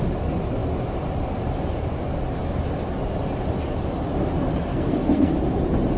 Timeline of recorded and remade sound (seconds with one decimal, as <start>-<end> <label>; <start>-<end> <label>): 0.0-4.7 recorded; 4.7-5.3 remade; 5.3-6.0 recorded